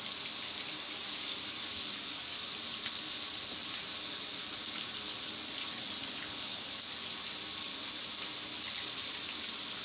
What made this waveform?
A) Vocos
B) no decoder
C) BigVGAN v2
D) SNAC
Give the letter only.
B